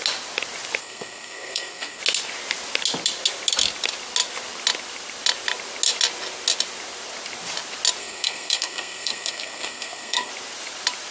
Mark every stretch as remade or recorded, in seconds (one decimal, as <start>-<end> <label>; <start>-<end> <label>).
0.0-0.8 recorded; 0.8-2.0 remade; 2.0-8.0 recorded; 8.0-10.3 remade; 10.3-11.1 recorded